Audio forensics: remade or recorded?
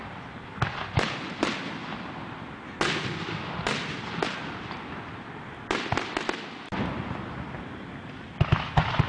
recorded